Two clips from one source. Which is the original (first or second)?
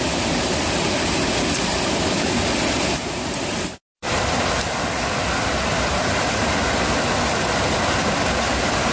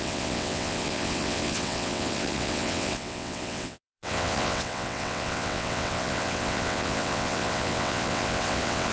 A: first